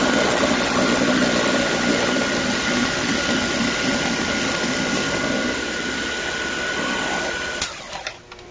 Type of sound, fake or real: real